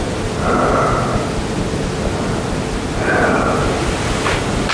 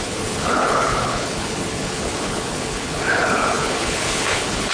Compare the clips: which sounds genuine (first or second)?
first